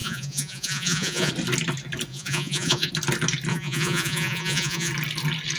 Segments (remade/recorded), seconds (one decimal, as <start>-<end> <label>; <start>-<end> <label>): 0.0-1.3 remade; 1.3-2.1 recorded; 2.1-2.9 remade; 2.9-3.5 recorded; 3.5-4.9 remade; 4.9-5.6 recorded